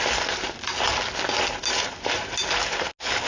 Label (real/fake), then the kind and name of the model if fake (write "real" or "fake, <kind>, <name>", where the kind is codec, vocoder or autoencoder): real